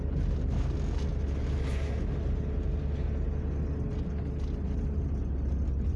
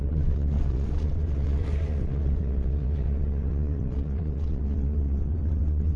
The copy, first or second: second